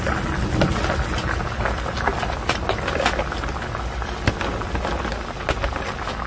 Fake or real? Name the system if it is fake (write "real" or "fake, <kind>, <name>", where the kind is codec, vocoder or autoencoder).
real